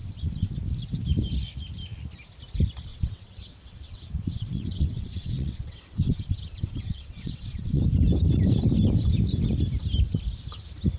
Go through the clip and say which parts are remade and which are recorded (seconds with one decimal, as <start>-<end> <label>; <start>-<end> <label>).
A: 0.0-0.5 remade; 0.5-2.9 recorded; 2.9-7.8 remade; 7.8-11.0 recorded